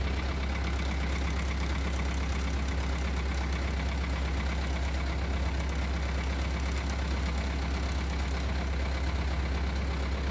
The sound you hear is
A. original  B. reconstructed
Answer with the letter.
A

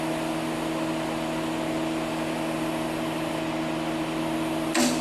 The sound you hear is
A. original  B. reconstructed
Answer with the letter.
A